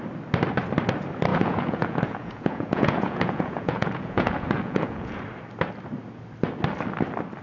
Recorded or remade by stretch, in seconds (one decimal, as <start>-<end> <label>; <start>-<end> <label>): 0.0-1.3 recorded; 1.3-5.2 remade; 5.2-7.4 recorded